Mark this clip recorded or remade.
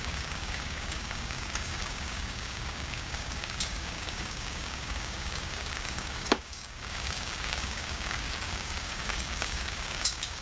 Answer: remade